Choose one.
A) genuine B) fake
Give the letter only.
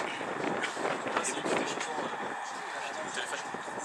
A